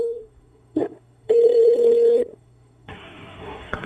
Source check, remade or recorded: remade